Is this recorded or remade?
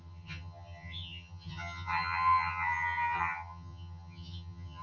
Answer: remade